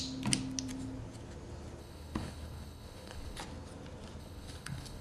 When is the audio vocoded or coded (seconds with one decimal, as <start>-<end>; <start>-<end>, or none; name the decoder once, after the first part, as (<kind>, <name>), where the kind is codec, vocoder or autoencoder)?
1.8-3.4 (codec, HILCodec); 4.2-5.0